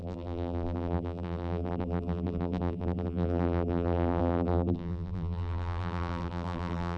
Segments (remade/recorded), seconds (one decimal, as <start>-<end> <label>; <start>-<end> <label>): 0.0-7.0 remade